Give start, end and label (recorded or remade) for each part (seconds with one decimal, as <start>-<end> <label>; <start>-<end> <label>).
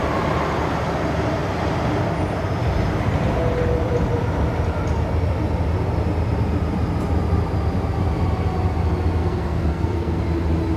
0.0-9.2 recorded; 9.2-10.2 remade; 10.2-10.8 recorded